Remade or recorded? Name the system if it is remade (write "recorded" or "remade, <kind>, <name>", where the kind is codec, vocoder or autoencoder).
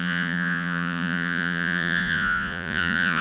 remade, vocoder, Vocos